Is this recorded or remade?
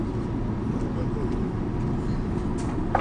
recorded